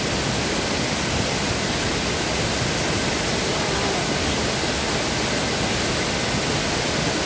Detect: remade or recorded recorded